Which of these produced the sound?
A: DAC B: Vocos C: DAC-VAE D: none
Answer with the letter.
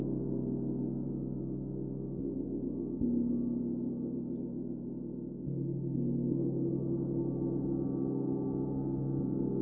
D